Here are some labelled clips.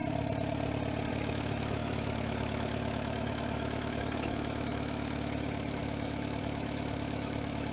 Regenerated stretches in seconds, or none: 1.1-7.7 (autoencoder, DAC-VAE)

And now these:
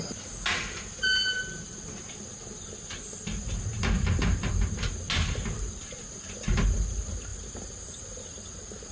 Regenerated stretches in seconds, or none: none

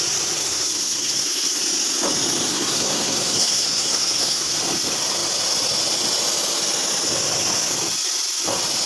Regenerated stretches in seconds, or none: 0.4-1.6 (codec, SNAC); 2.5-4.5

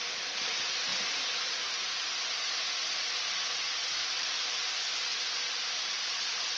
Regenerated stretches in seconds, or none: 4.1-6.6 (vocoder, BigVGAN v2)

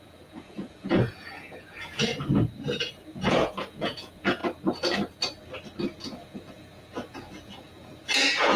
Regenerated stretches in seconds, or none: 0.0-2.1 (vocoder, Vocos); 2.9-4.4; 6.0-8.6